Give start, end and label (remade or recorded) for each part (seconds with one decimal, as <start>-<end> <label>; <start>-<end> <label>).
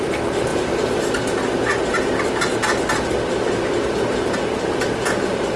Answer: 0.0-5.6 recorded